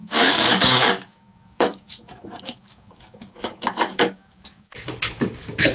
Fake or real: fake